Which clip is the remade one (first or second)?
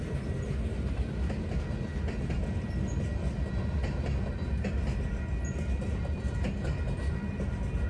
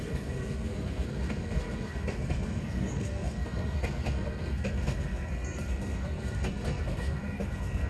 second